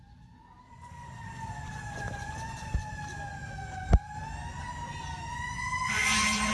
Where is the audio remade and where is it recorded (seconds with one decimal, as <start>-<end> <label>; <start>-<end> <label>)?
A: 0.0-0.7 recorded; 0.7-2.7 remade; 2.7-5.3 recorded; 5.3-6.5 remade